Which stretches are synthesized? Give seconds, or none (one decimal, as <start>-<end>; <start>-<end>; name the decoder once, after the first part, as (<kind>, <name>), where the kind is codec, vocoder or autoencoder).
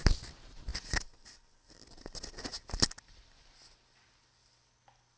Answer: none